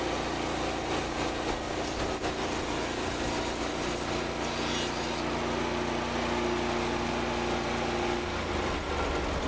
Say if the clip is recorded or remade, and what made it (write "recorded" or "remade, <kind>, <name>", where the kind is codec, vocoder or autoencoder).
recorded